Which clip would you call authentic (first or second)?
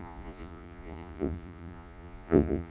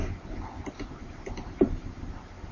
second